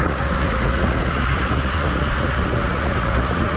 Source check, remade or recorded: remade